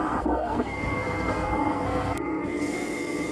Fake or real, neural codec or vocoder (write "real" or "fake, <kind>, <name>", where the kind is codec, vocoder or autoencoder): fake, codec, SNAC